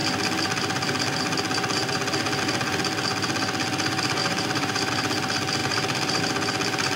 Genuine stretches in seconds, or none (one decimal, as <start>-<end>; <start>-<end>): 0.0-4.2; 4.9-5.6; 6.2-7.0